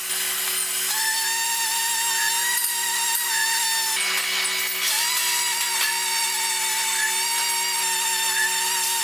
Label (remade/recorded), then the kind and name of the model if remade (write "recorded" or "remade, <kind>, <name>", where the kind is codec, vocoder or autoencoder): recorded